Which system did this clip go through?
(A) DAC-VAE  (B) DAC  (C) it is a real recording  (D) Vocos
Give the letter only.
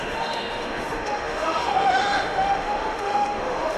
A